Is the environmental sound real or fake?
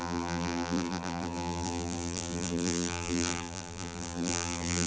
fake